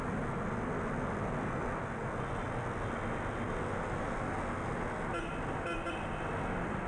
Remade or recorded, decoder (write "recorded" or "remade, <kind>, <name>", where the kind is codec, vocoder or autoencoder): recorded